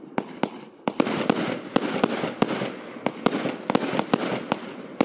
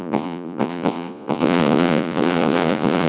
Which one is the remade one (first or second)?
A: second